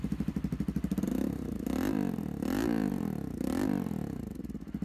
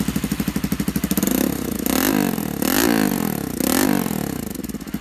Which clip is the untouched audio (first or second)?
second